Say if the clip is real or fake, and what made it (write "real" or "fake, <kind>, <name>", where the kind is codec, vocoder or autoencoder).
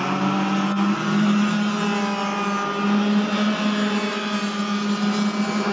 real